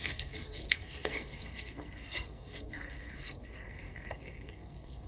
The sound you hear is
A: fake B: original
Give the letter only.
A